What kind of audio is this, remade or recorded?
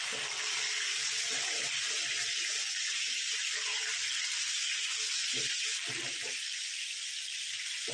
remade